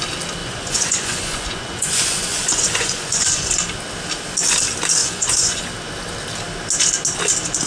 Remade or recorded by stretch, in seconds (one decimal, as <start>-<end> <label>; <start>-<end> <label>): 0.0-0.4 recorded; 0.4-3.5 remade; 3.5-5.0 recorded; 5.0-5.6 remade; 5.6-7.7 recorded